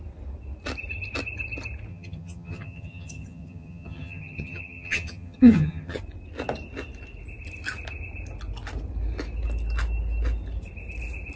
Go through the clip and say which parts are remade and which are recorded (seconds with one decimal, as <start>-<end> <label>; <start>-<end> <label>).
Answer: 0.0-1.9 recorded; 1.9-6.0 remade; 6.0-11.4 recorded